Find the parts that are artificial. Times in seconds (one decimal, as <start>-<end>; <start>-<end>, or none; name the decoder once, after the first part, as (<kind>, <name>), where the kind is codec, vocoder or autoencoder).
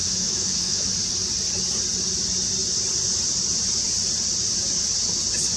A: 0.0-0.9 (autoencoder, DAC-VAE)